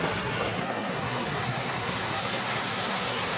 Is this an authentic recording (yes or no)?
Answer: no